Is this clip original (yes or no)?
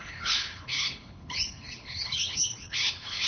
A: no